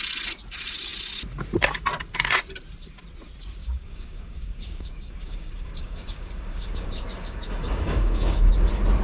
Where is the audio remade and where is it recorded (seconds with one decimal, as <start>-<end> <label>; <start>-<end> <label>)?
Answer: 0.0-3.6 recorded; 3.6-8.5 remade; 8.5-9.0 recorded